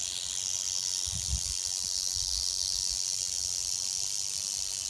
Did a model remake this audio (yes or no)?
no